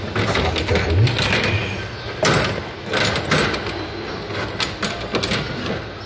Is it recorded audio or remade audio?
recorded